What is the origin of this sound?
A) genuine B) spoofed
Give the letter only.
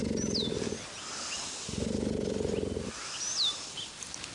A